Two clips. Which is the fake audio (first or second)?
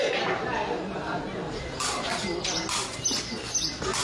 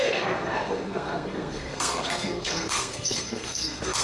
second